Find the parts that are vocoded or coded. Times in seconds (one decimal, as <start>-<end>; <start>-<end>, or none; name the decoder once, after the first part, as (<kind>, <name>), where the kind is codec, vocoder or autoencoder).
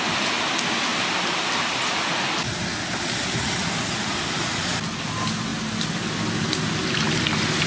none